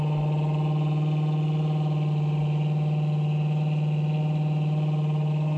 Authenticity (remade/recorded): recorded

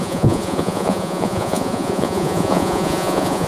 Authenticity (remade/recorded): remade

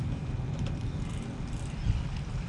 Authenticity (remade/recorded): recorded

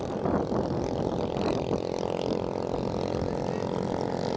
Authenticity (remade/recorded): recorded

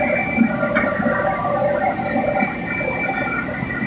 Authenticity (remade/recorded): recorded